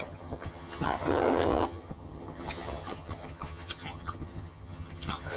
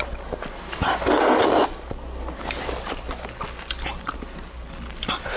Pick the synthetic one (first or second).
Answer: first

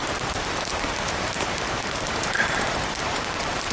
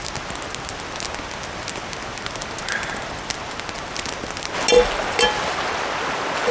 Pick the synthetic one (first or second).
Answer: first